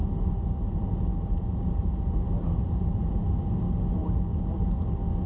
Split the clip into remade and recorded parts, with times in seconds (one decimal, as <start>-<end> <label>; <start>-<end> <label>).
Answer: 0.0-0.7 remade; 0.7-1.1 recorded; 1.1-3.4 remade; 3.4-5.3 recorded